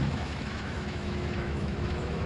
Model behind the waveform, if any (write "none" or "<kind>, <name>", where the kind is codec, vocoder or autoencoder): autoencoder, DAC-VAE